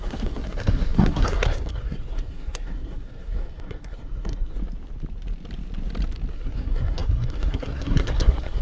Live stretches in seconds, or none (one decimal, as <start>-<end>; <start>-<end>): 4.6-6.3